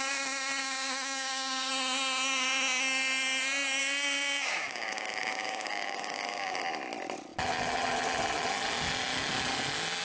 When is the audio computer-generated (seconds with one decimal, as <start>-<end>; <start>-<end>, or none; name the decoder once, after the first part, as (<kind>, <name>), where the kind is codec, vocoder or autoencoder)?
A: 0.6-1.7 (codec, DAC); 3.8-6.6